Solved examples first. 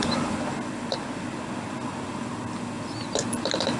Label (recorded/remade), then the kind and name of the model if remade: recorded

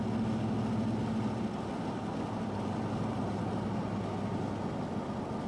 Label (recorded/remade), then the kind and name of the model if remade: recorded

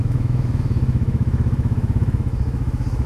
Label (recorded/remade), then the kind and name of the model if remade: remade, autoencoder, DAC-VAE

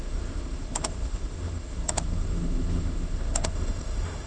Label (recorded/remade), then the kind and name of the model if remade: remade, autoencoder, DAC-VAE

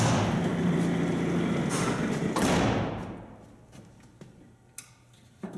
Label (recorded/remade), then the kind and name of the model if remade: recorded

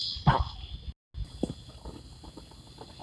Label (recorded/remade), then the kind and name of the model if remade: recorded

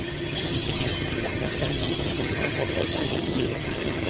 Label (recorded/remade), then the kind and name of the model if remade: remade, vocoder, HiFi-GAN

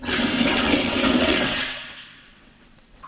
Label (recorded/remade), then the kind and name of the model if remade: remade, vocoder, WaveNeXt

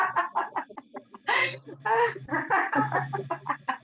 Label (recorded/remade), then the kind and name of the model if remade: recorded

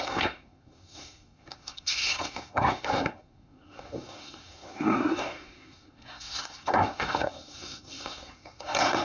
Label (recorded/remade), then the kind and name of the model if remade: remade, codec, SNAC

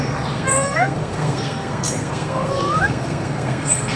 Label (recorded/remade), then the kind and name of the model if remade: remade, codec, SNAC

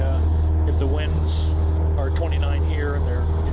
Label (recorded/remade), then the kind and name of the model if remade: recorded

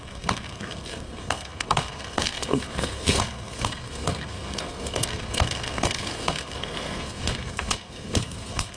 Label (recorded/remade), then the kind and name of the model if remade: remade, codec, SNAC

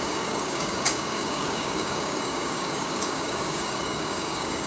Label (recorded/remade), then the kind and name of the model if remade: remade, codec, DAC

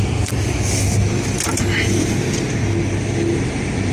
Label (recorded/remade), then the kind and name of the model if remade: recorded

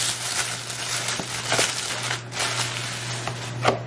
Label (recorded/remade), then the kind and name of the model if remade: recorded